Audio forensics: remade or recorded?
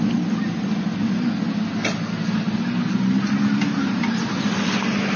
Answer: recorded